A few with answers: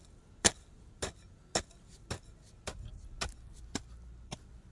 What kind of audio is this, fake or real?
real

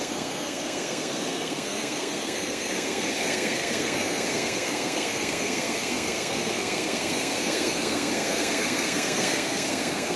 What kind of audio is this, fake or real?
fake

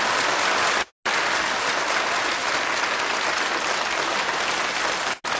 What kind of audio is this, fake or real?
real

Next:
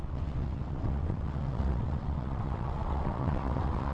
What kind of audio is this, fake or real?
fake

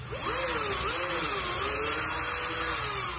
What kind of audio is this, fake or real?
real